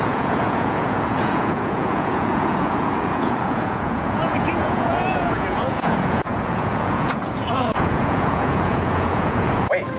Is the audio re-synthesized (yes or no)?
yes